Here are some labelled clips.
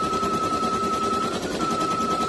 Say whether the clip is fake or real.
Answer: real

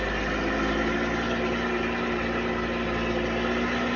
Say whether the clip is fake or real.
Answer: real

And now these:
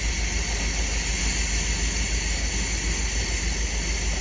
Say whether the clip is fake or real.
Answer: real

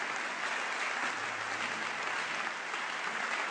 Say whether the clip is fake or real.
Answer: real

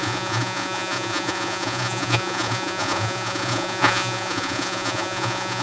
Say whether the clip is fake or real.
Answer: fake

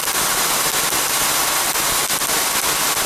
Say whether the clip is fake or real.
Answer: real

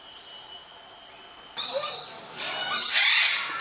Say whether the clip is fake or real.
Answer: real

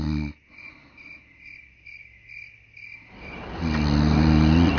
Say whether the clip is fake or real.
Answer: real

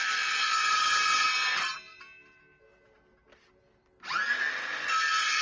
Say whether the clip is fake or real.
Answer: real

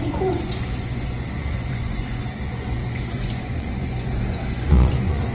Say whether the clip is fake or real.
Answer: fake